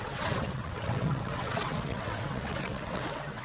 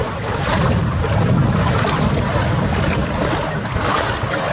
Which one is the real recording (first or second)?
second